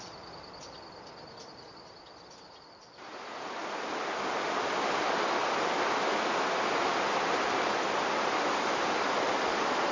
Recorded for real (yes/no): yes